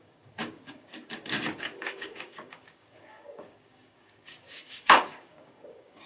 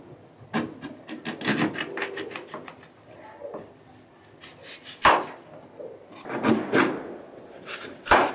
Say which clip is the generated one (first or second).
first